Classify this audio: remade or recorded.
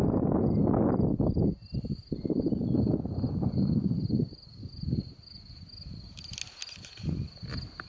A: recorded